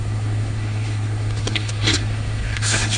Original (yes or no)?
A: no